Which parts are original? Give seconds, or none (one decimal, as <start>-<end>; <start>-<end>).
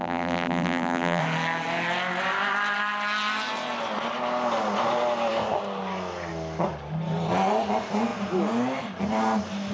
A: 1.2-9.7